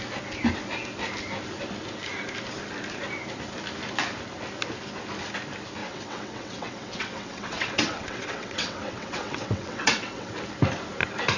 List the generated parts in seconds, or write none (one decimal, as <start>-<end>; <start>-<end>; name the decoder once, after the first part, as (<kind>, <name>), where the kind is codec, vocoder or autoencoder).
5.8-10.3 (vocoder, WaveNeXt)